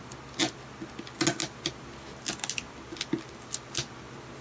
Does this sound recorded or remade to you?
recorded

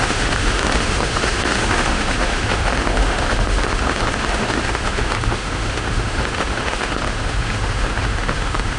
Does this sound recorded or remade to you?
remade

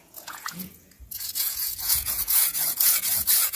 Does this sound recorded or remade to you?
remade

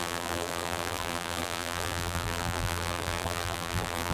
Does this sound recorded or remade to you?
remade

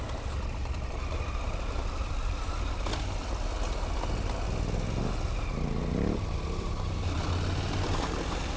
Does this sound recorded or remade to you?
recorded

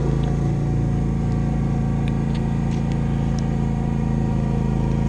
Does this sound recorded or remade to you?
recorded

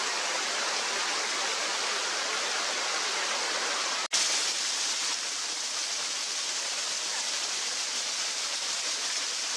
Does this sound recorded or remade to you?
recorded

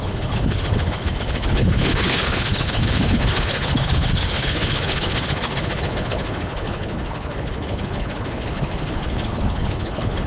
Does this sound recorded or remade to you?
remade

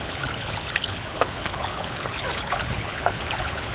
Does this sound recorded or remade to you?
remade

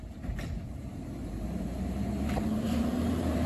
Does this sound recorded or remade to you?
remade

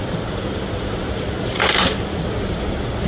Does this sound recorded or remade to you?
remade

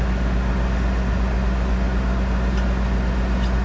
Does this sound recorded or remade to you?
recorded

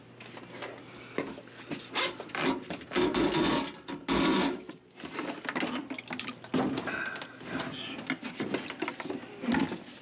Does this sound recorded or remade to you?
recorded